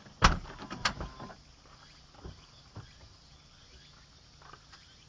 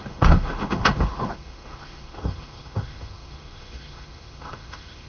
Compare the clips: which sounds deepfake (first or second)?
second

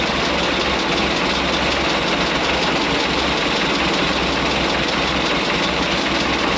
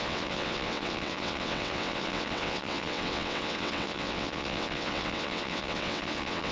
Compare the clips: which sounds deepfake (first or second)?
second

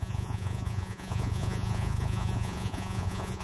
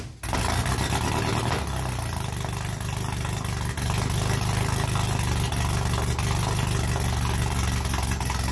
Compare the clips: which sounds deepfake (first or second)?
first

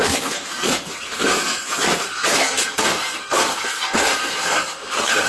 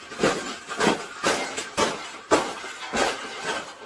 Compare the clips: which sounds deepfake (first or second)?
first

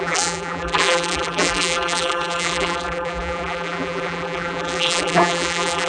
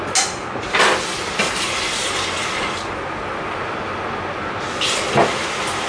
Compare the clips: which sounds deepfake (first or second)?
first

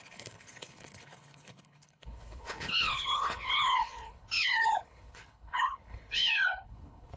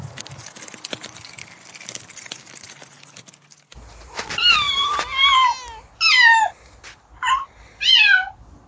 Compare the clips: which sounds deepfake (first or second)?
first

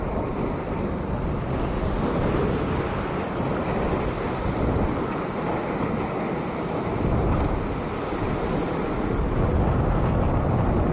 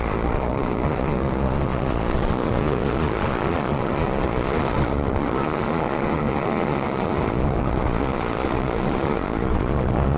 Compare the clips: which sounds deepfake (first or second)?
second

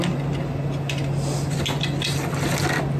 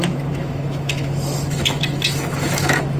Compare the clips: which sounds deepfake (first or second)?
second